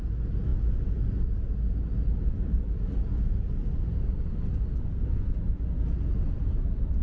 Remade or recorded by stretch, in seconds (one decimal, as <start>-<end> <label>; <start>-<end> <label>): 0.0-7.0 recorded